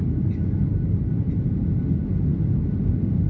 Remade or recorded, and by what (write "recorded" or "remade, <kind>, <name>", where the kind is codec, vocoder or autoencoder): recorded